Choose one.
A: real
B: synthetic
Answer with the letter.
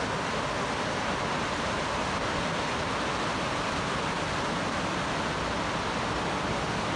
A